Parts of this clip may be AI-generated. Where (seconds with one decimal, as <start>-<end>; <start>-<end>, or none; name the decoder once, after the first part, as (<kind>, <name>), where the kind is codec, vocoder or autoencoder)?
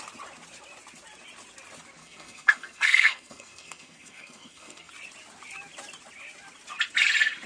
2.0-4.9 (codec, SNAC)